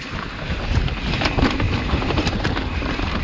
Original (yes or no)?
yes